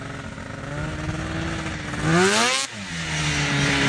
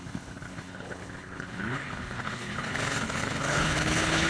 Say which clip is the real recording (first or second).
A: first